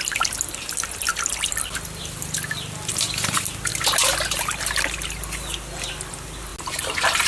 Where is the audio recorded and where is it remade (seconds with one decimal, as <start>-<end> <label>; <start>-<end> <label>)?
0.0-7.3 recorded